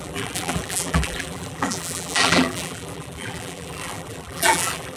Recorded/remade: remade